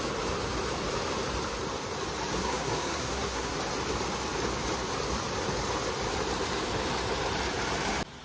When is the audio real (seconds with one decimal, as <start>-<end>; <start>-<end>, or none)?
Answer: 0.0-2.4; 3.6-8.2